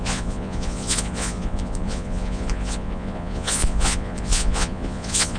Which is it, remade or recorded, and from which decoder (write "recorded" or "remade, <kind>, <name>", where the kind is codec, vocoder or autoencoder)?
remade, vocoder, Vocos